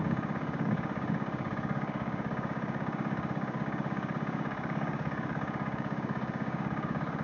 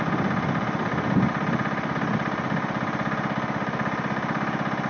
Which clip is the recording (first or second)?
second